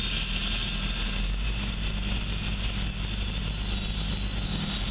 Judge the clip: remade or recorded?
recorded